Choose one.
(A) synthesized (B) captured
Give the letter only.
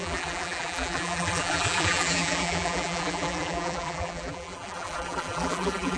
A